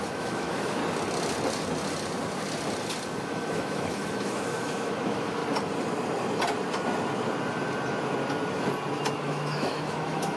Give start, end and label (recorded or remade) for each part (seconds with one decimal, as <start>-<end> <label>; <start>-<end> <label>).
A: 0.0-0.8 remade; 0.8-3.2 recorded; 3.2-5.4 remade; 5.4-9.2 recorded; 9.2-10.4 remade